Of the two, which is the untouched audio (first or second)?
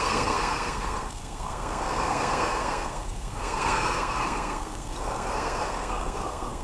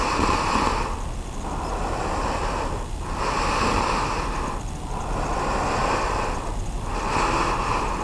second